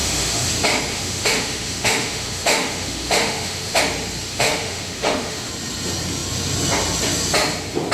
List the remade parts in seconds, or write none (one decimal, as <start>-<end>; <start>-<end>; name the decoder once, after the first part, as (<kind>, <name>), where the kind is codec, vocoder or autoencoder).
0.0-0.5 (autoencoder, DAC-VAE); 0.9-3.8; 4.3-5.5